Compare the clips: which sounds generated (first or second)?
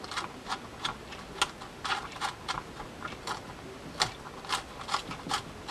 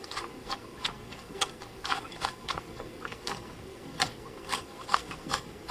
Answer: second